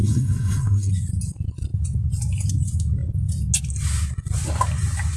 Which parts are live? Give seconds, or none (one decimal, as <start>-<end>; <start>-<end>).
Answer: 0.9-5.2